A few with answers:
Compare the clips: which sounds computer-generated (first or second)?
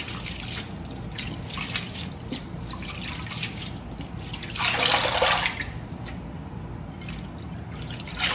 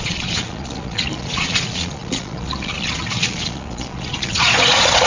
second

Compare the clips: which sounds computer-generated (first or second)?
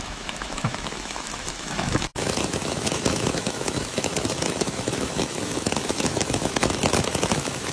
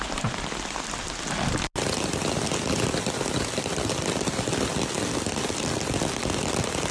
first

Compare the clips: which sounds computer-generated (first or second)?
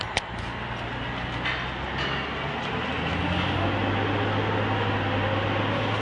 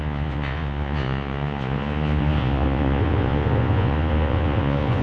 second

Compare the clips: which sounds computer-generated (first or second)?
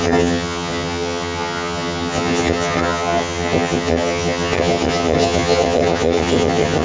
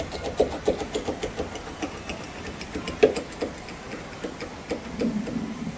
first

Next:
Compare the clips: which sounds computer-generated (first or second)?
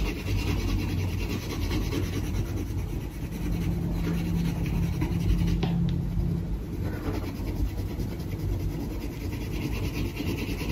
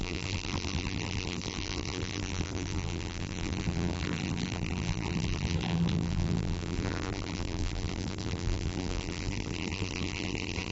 second